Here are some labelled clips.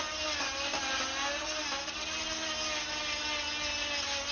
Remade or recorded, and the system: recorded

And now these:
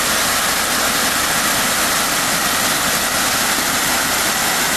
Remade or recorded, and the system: recorded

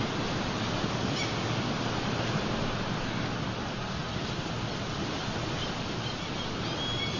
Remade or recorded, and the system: recorded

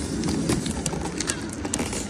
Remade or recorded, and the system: recorded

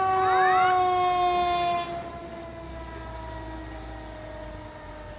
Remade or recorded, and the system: recorded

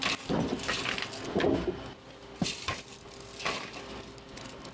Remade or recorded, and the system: recorded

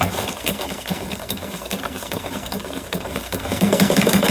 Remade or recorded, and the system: remade, codec, SNAC